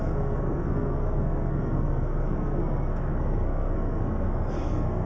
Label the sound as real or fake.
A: fake